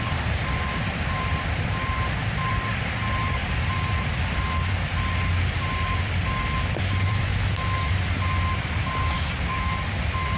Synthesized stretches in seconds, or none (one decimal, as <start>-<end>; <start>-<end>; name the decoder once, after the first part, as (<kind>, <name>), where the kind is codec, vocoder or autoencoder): 0.0-3.4 (vocoder, BigVGAN v2); 4.5-7.3; 8.9-10.4